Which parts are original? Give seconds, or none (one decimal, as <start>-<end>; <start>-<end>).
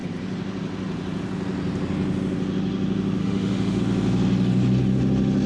0.0-3.2; 3.8-5.5